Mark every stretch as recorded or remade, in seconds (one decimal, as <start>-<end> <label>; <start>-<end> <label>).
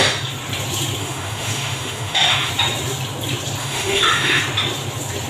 0.0-1.0 recorded; 1.0-2.5 remade; 2.5-3.6 recorded; 3.6-4.4 remade; 4.4-5.3 recorded